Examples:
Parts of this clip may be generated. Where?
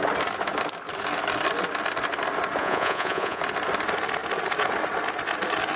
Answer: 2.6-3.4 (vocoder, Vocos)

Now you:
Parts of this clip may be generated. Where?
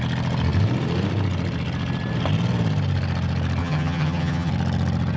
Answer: 3.6-4.5 (vocoder, HiFi-GAN)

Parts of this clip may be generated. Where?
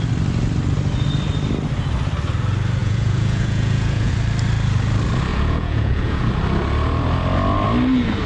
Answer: 2.8-4.1 (vocoder, Vocos); 5.3-6.3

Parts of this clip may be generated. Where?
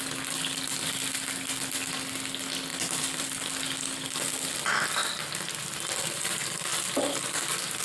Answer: 2.7-3.4 (vocoder, BigVGAN v2)